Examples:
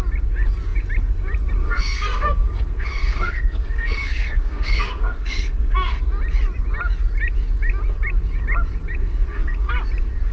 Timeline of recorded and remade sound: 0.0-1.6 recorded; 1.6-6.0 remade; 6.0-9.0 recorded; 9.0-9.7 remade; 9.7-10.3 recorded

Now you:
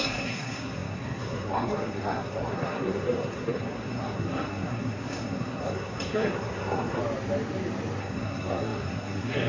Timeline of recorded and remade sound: 0.0-7.0 remade; 7.0-8.0 recorded; 8.0-9.5 remade

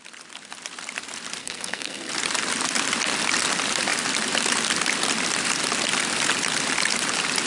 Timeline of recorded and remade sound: 0.0-1.4 recorded; 1.4-2.1 remade; 2.1-7.5 recorded

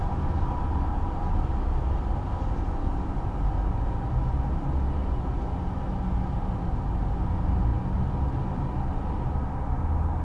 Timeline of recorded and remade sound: 0.0-10.2 recorded

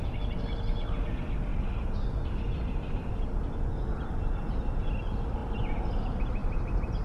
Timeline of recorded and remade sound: 0.0-7.0 recorded

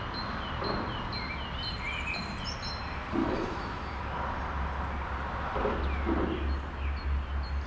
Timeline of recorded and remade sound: 0.0-3.2 recorded; 3.2-4.0 remade; 4.0-7.7 recorded